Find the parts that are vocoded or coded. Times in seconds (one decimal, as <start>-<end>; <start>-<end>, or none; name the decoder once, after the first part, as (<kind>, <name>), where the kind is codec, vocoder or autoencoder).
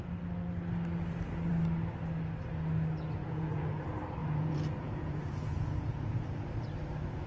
3.2-3.8 (vocoder, Vocos); 4.2-6.0